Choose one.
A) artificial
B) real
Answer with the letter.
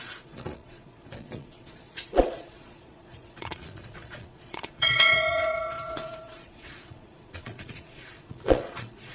A